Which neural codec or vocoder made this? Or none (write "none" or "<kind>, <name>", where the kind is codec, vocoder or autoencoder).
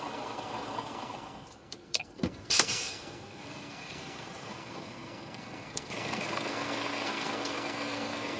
codec, SNAC